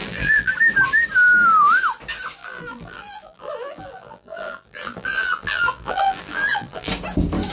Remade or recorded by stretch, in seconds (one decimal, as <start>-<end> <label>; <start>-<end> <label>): 0.0-0.5 remade; 0.5-2.4 recorded; 2.4-6.9 remade; 6.9-7.5 recorded